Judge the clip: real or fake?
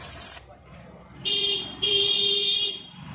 fake